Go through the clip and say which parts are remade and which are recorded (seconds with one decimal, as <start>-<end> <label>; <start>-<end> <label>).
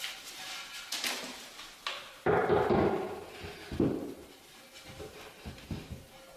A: 0.0-6.4 recorded